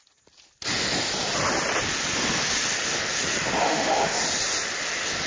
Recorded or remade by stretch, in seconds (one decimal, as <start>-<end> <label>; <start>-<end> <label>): 0.0-3.6 recorded; 3.6-4.2 remade; 4.2-5.3 recorded